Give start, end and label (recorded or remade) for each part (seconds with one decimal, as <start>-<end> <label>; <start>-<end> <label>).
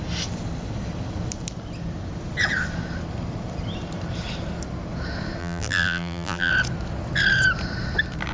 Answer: 0.0-5.4 recorded; 5.4-6.5 remade; 6.5-8.3 recorded